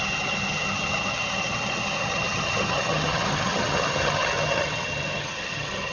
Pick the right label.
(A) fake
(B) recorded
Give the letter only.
A